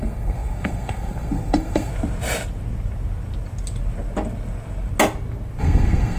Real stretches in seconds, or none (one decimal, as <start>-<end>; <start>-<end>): 1.9-5.6